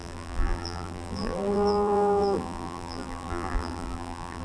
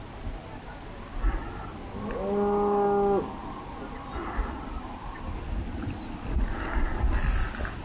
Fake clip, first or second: first